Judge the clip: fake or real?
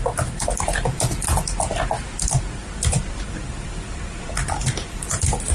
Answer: fake